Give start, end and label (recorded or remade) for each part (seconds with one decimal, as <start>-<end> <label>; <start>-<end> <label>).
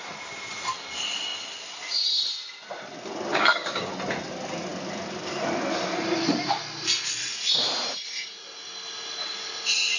0.0-3.3 recorded; 3.3-3.9 remade; 3.9-10.0 recorded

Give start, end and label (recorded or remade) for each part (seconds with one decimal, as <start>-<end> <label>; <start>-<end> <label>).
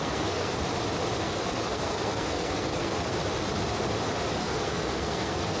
0.0-0.5 remade; 0.5-1.2 recorded; 1.2-3.2 remade; 3.2-4.4 recorded; 4.4-5.6 remade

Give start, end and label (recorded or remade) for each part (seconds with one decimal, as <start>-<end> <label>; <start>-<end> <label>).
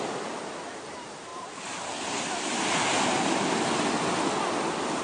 0.0-5.0 recorded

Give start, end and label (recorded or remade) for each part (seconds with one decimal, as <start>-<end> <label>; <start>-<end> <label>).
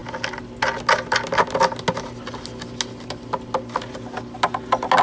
0.0-5.0 recorded